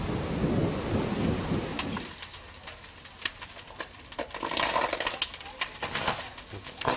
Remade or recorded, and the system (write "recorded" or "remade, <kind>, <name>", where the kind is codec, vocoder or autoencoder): recorded